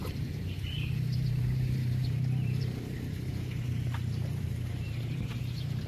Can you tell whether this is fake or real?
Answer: fake